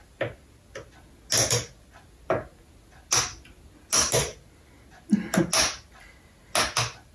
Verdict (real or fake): real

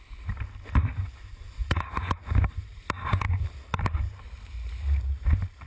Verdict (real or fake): real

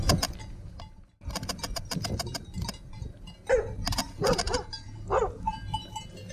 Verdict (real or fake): real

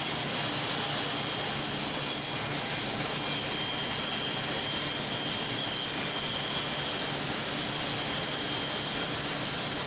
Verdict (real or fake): real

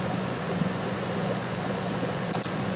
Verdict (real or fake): fake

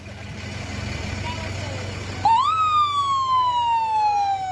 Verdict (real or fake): real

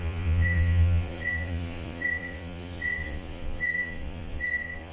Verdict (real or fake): fake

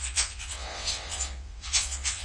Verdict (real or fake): fake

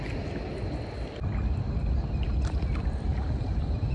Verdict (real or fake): real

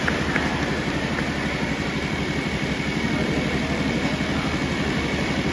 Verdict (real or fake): real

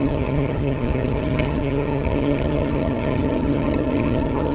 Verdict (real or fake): fake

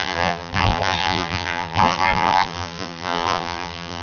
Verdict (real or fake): fake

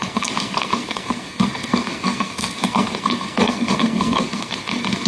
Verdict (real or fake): fake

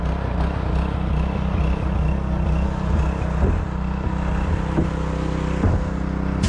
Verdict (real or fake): real